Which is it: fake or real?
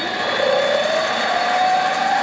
fake